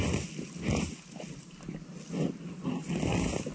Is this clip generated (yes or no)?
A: no